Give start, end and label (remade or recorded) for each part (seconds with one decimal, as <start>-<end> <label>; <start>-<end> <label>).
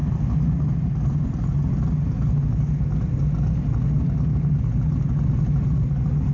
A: 0.0-6.3 recorded